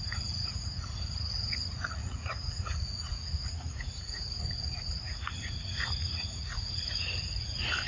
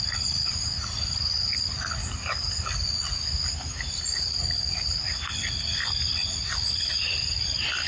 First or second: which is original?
second